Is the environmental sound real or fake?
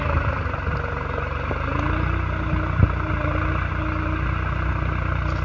real